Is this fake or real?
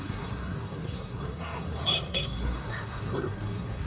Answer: fake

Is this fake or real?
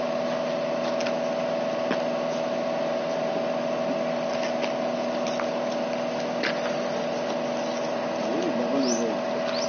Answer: real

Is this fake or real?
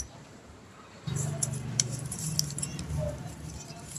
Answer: fake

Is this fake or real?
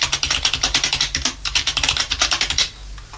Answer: fake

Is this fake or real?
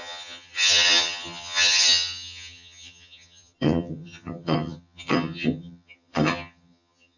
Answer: fake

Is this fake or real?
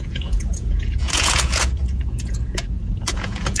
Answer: fake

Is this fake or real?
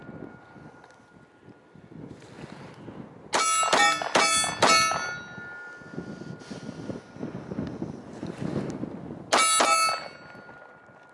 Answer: real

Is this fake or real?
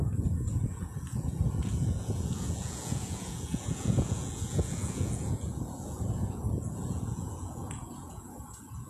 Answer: fake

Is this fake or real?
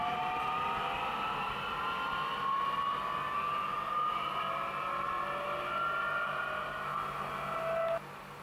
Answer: real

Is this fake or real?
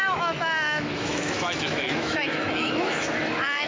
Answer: fake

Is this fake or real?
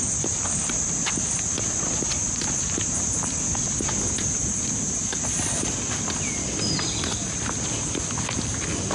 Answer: real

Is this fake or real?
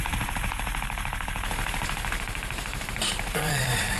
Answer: fake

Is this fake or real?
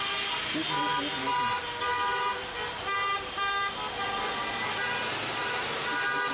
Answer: real